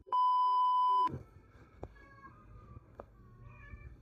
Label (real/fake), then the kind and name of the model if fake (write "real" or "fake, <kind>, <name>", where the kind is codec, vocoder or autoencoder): fake, codec, SNAC